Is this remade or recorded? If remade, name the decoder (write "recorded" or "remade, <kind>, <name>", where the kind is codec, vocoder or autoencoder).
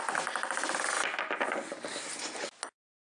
recorded